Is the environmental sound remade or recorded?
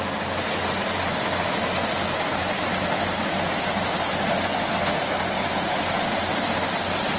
recorded